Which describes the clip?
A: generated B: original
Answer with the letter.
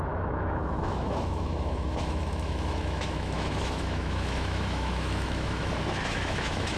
A